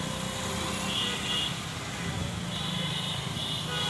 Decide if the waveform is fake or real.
real